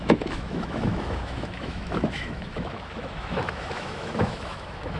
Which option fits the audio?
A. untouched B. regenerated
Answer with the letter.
B